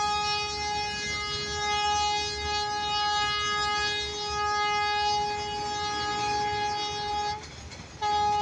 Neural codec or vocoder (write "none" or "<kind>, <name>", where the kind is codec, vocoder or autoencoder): none